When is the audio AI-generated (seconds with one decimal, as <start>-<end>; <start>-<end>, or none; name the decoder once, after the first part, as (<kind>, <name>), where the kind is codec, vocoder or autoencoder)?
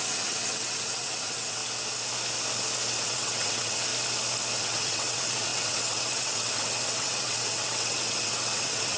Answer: 0.0-1.6 (vocoder, WaveNeXt); 3.0-3.9; 4.6-9.0